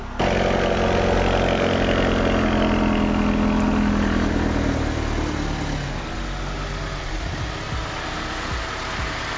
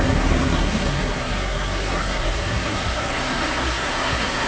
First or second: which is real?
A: first